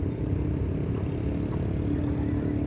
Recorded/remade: recorded